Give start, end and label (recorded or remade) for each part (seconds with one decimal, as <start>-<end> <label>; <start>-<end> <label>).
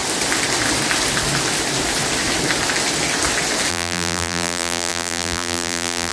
0.0-3.7 recorded; 3.7-6.1 remade